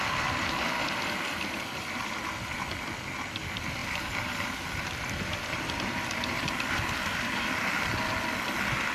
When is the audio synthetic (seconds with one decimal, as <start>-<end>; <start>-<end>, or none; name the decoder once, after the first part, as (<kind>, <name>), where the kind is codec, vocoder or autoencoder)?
3.8-7.7 (vocoder, BigVGAN v2)